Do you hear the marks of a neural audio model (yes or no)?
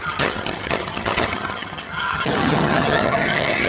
yes